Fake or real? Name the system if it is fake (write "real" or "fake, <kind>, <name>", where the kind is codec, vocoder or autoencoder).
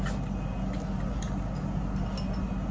real